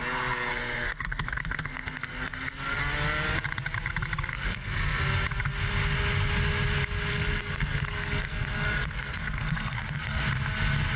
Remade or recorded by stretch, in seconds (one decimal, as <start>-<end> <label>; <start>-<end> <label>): 0.0-0.5 recorded; 0.5-2.8 remade; 2.8-4.3 recorded; 4.3-5.0 remade; 5.0-7.1 recorded; 7.1-10.2 remade; 10.2-11.0 recorded